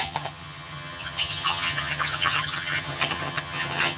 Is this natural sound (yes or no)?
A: no